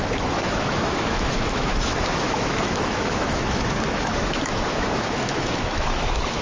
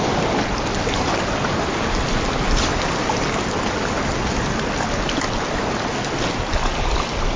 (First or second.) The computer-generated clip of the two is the first